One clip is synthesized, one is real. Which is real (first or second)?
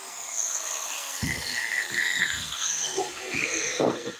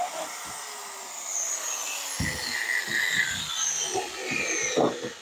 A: second